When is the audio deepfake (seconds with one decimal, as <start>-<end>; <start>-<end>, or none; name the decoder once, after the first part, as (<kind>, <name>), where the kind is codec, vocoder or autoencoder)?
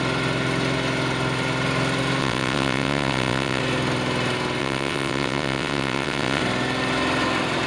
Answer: 2.2-3.6 (vocoder, WaveNeXt); 4.6-6.4